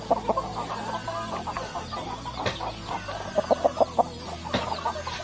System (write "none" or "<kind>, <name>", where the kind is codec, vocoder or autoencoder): none